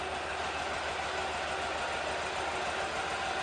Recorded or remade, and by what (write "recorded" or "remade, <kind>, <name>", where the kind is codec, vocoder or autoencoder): remade, vocoder, BigVGAN v2